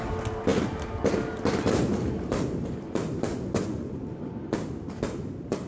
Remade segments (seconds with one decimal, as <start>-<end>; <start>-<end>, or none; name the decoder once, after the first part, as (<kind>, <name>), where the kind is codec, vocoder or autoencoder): 3.3-3.9 (vocoder, Vocos)